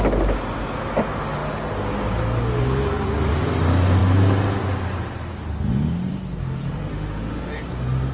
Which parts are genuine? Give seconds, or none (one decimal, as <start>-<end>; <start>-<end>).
0.0-6.9; 7.5-8.1